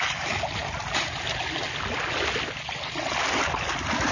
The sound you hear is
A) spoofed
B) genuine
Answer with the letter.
B